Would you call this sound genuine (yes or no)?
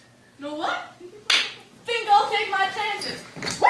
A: yes